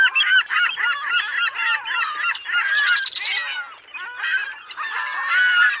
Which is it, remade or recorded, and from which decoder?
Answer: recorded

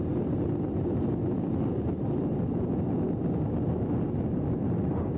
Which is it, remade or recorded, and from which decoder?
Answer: recorded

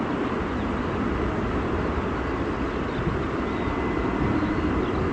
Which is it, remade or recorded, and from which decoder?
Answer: recorded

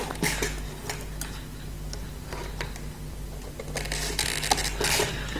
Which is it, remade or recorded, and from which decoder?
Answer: recorded